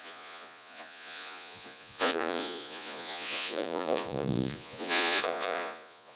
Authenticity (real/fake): fake